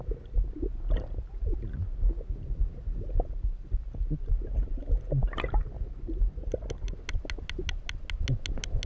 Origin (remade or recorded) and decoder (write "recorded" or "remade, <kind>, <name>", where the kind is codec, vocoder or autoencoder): recorded